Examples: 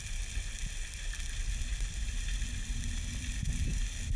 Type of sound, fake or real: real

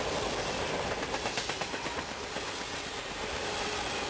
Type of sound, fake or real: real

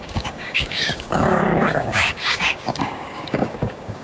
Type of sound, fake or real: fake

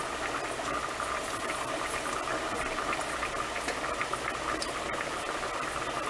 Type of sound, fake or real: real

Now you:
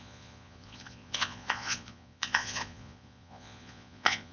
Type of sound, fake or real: fake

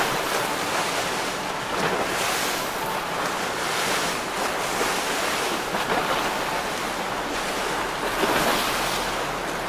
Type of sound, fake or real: real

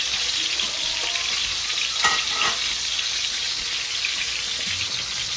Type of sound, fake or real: real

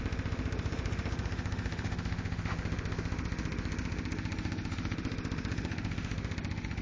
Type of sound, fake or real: fake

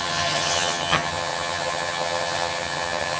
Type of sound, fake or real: fake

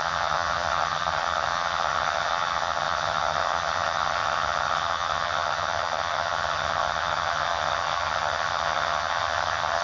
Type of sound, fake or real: fake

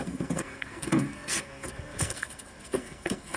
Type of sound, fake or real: fake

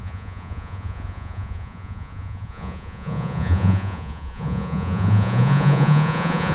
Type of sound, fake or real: fake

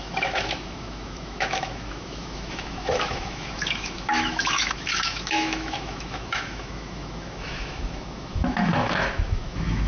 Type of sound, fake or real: fake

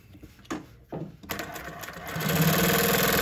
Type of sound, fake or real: real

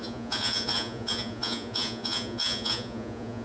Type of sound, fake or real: fake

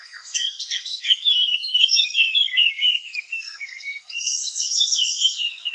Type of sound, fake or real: fake